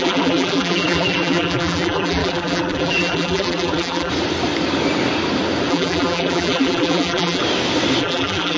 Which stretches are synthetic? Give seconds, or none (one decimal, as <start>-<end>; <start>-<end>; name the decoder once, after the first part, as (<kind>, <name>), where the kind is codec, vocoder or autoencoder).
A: 0.0-4.1 (vocoder, BigVGAN v2); 5.7-7.4; 8.0-8.6